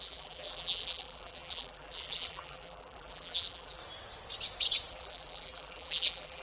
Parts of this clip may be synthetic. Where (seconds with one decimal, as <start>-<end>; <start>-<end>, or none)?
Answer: 0.0-3.8; 4.9-6.4